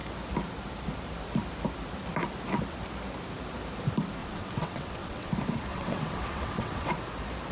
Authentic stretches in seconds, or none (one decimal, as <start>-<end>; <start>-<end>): 0.0-4.2; 5.3-5.7; 6.9-7.5